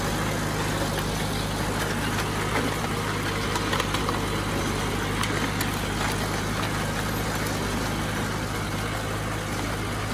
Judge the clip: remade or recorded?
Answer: recorded